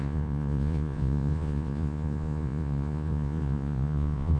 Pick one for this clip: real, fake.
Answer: fake